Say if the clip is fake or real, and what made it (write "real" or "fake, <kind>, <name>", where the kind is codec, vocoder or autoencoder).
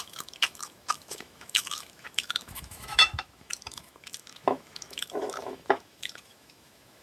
fake, autoencoder, DAC-VAE